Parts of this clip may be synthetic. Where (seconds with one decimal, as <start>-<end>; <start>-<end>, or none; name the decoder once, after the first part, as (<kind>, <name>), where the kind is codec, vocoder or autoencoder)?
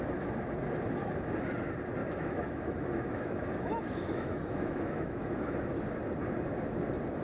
2.0-5.7 (autoencoder, DAC-VAE)